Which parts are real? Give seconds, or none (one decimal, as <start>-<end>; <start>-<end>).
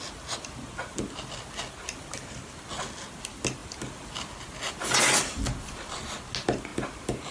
0.0-7.3